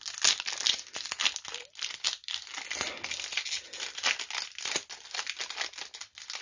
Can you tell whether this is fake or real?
real